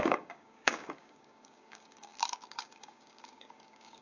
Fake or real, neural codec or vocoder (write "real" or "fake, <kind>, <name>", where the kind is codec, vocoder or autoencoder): fake, codec, DAC